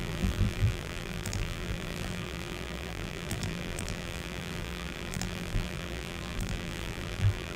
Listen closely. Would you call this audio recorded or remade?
remade